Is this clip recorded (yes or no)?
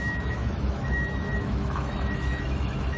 no